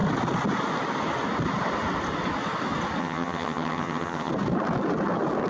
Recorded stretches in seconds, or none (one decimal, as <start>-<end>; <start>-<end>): 0.0-3.0; 4.3-5.5